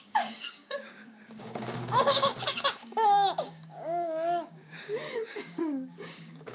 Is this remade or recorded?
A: remade